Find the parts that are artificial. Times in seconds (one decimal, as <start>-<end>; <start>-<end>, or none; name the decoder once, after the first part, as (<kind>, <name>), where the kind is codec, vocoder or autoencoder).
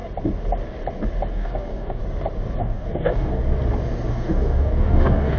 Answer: 1.3-2.0 (codec, DAC); 2.6-3.4; 4.1-5.4